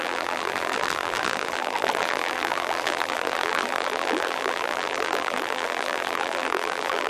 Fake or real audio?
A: fake